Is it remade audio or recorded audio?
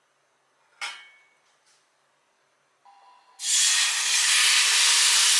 recorded